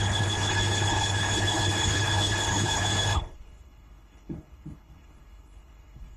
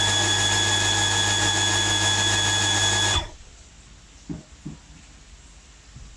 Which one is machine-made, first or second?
first